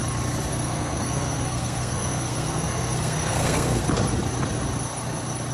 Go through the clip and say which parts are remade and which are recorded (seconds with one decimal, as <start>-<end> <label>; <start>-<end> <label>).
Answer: 0.0-0.5 recorded; 0.5-3.8 remade; 3.8-5.5 recorded